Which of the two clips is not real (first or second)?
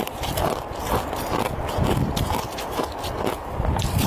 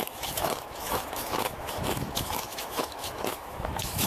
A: second